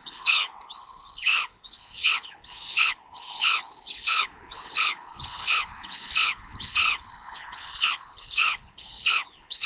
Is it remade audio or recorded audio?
remade